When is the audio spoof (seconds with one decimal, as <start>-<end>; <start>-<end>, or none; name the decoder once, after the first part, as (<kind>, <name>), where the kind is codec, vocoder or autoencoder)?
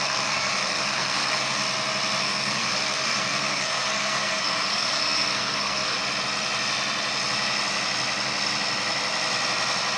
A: 0.0-1.6 (codec, SNAC); 2.2-6.0